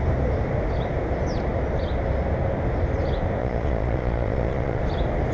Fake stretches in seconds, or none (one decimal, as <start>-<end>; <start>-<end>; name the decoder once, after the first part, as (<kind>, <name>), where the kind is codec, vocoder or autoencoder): 3.4-4.8 (vocoder, Vocos)